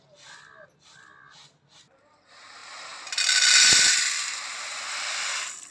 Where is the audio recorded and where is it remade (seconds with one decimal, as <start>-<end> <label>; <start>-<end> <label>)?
0.0-5.7 recorded